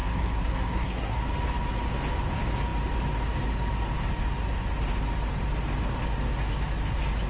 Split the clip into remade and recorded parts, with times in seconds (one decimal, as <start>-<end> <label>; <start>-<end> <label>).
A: 0.0-1.2 remade; 1.2-7.3 recorded